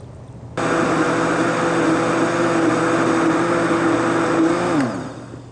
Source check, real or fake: real